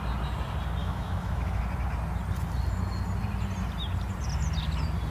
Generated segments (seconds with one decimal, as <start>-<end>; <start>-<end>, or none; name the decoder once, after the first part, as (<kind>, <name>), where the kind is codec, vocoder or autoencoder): 0.8-1.6 (autoencoder, DAC-VAE)